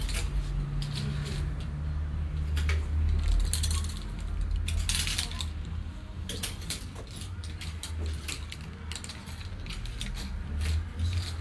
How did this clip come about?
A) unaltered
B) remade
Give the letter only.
A